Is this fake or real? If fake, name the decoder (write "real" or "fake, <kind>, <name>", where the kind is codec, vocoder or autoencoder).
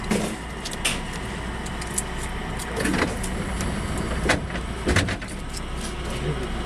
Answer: real